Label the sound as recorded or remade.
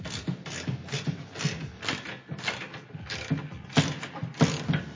recorded